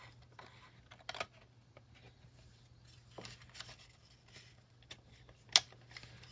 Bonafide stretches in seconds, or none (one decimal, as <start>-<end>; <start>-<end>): 0.0-1.6; 2.9-6.3